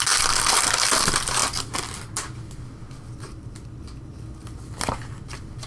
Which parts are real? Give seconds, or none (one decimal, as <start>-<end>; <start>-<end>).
0.0-5.7